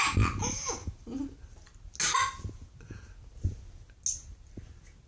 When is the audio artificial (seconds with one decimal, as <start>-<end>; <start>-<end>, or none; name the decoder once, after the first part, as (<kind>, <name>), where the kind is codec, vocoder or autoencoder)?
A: none